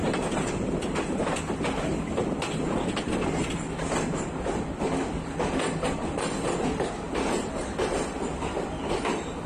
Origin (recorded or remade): recorded